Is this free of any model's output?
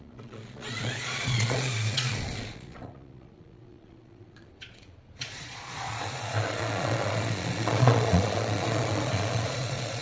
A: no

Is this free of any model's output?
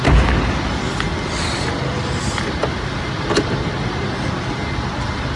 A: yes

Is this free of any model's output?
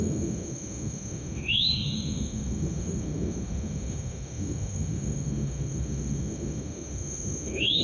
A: no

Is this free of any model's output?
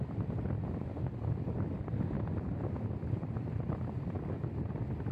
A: yes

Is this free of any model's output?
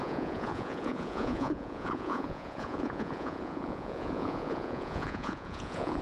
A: no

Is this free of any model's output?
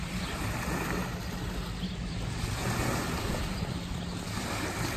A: yes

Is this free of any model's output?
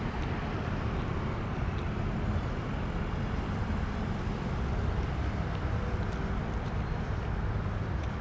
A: no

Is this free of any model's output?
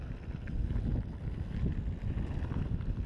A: yes